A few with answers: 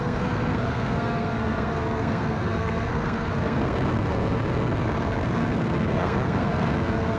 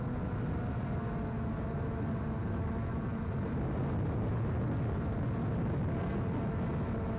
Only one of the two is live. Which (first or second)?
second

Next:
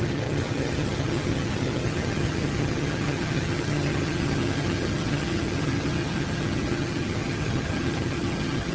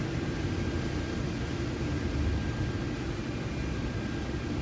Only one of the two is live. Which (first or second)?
second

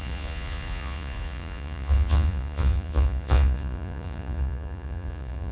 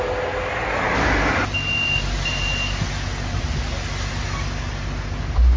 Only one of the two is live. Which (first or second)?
second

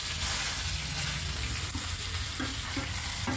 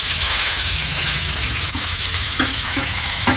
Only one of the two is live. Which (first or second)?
first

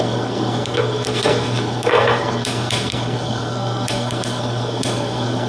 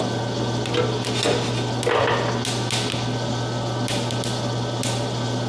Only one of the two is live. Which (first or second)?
second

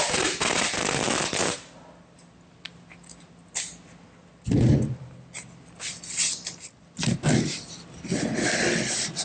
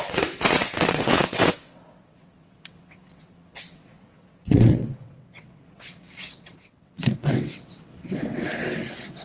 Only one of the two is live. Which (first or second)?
first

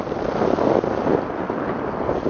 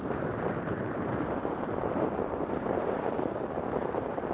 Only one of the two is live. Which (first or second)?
first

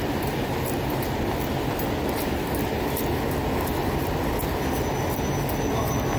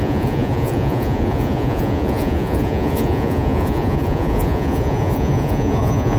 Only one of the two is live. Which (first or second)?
first